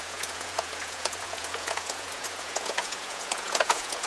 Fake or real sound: fake